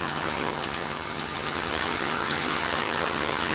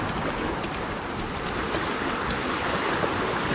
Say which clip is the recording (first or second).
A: second